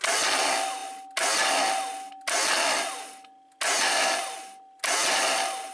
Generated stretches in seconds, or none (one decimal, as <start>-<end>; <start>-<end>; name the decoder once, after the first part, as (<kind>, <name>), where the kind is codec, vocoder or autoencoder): none